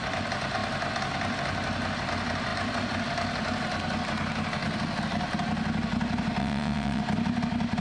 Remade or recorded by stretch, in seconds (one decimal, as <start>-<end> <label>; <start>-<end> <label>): 0.0-6.4 recorded; 6.4-7.0 remade; 7.0-7.8 recorded